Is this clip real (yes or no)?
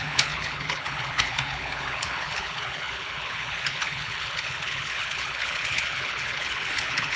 no